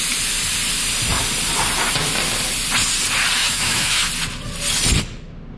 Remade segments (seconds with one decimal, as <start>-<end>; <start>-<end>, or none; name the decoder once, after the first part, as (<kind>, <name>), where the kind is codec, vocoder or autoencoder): 3.4-4.1 (autoencoder, DAC-VAE)